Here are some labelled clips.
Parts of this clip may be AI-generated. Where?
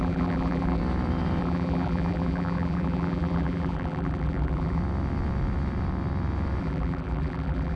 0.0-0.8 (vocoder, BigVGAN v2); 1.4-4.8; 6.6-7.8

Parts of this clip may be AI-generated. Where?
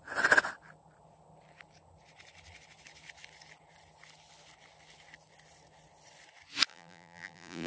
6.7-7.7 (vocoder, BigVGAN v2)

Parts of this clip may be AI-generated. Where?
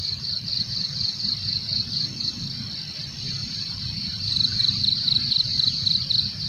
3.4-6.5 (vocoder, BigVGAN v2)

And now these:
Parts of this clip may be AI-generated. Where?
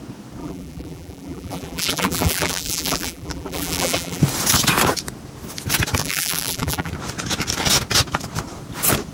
0.4-4.2 (vocoder, BigVGAN v2); 6.0-6.9